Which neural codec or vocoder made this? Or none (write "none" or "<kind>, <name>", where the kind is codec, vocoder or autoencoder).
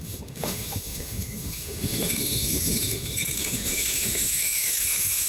autoencoder, DAC-VAE